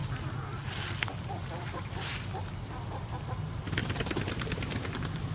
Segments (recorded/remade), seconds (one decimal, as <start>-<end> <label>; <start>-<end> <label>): 0.0-5.3 recorded